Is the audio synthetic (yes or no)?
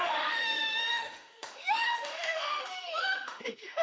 yes